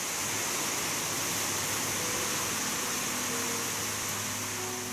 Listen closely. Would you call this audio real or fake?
real